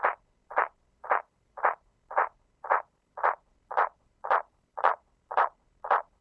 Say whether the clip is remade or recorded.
remade